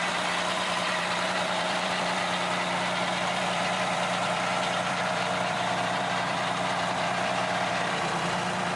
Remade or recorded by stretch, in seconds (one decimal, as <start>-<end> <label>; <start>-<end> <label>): 0.0-2.2 remade; 2.2-3.3 recorded; 3.3-8.8 remade